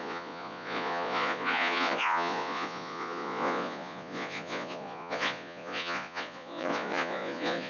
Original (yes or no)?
no